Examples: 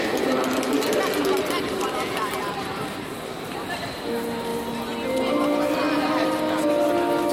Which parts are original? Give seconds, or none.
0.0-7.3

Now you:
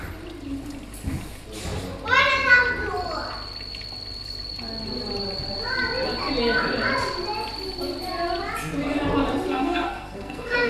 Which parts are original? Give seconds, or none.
0.0-9.5

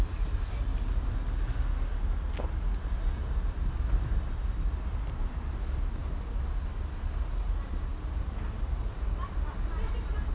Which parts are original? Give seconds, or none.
0.0-10.3

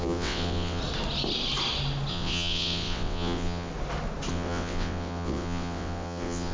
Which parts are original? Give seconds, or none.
0.8-2.1; 3.7-4.3

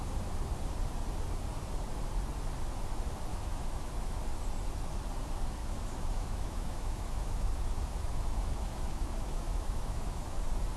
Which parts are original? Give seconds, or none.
0.0-3.3; 4.2-5.6; 10.4-10.8

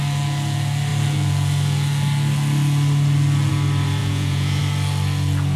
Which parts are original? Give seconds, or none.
0.0-4.0; 4.6-5.6